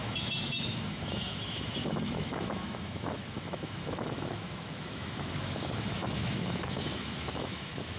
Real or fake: fake